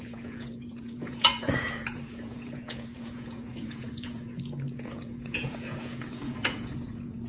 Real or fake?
fake